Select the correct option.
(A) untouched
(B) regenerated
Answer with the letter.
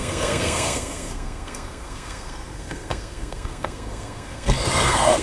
B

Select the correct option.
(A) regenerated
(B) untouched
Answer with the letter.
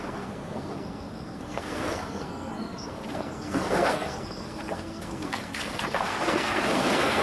A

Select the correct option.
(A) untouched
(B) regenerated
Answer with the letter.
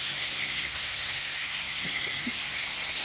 B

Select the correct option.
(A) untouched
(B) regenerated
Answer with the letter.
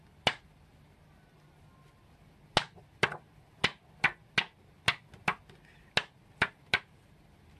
A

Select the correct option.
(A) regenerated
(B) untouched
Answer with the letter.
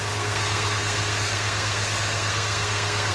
A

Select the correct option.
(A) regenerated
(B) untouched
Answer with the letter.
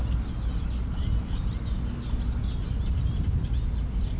B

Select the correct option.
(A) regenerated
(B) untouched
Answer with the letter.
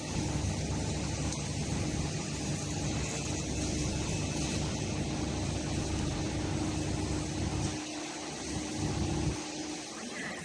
B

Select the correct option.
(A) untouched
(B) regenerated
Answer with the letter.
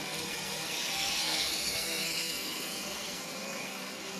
B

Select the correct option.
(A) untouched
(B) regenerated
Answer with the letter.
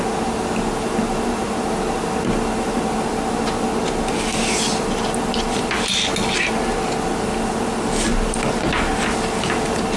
A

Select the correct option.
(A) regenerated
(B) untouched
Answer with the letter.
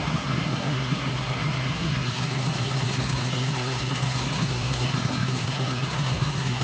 A